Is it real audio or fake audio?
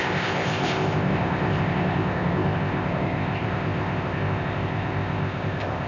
fake